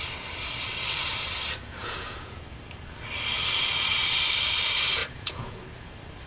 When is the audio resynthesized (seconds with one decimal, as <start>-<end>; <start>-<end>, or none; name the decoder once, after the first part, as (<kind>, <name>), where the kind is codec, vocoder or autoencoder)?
1.8-2.4 (vocoder, Vocos); 5.0-5.6